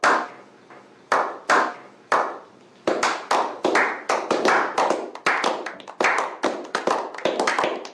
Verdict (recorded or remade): recorded